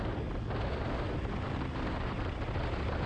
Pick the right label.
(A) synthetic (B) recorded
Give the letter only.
B